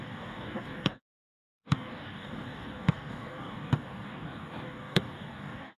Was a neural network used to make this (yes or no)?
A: yes